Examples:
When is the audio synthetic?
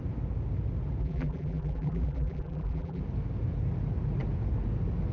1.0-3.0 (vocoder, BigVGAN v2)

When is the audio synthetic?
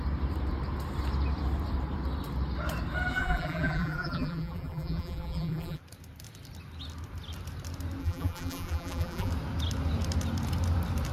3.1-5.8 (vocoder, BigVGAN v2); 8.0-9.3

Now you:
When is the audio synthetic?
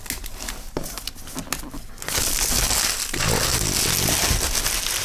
none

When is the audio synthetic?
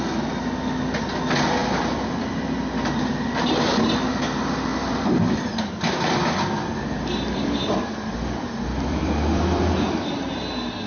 1.6-2.2 (vocoder, BigVGAN v2); 4.7-9.7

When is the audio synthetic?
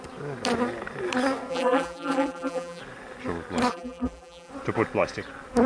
1.5-2.8 (vocoder, BigVGAN v2); 3.7-4.5